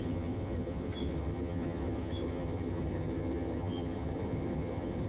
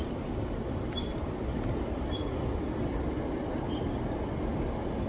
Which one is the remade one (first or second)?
first